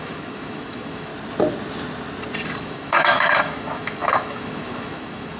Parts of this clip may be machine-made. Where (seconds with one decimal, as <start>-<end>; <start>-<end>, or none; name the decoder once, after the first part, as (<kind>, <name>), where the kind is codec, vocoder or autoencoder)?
0.0-1.1 (autoencoder, DAC-VAE); 2.6-5.4